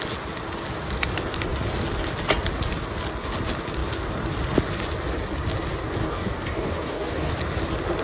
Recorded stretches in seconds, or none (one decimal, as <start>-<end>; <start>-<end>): 0.0-6.0; 7.3-8.0